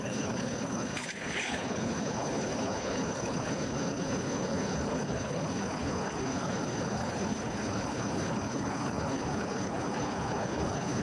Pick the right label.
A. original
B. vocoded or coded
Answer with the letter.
B